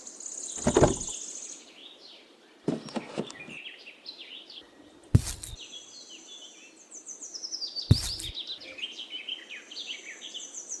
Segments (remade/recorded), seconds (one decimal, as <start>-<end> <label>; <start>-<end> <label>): 0.0-10.8 recorded